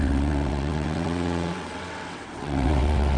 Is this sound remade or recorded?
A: remade